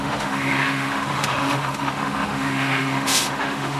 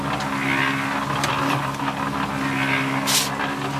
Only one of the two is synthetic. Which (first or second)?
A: first